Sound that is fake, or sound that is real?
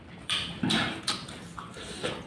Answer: fake